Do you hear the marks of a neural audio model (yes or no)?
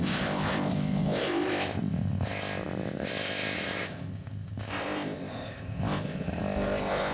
yes